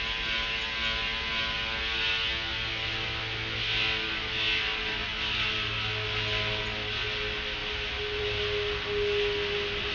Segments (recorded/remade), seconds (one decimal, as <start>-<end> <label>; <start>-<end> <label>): 0.0-9.9 recorded